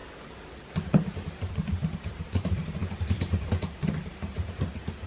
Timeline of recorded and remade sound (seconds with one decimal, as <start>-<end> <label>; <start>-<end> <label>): 0.0-2.0 recorded; 2.0-5.1 remade